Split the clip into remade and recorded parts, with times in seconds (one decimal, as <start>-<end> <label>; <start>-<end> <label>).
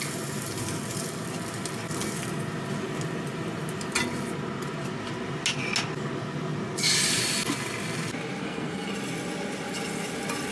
0.0-8.4 recorded; 8.4-8.9 remade; 8.9-10.5 recorded